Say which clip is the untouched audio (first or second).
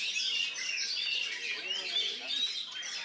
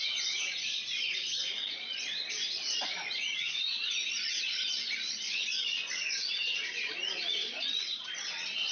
first